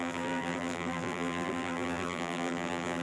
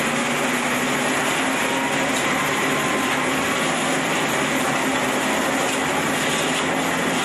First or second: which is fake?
first